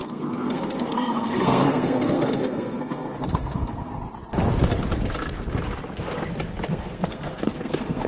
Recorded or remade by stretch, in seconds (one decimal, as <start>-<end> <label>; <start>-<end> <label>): 0.0-3.9 remade; 3.9-6.7 recorded; 6.7-8.1 remade